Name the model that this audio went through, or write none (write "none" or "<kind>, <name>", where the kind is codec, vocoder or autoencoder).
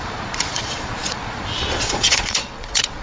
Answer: vocoder, Vocos